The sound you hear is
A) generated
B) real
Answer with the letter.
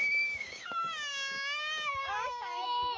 A